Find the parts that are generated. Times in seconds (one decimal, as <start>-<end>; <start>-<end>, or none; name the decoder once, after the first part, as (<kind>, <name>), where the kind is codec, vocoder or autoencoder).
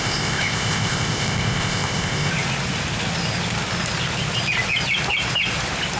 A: 0.0-2.3 (codec, ZipCodec)